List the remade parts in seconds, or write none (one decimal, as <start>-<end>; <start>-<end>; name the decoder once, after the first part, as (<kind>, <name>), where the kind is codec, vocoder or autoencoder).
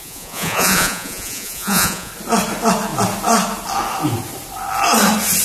0.0-2.1 (vocoder, Vocos)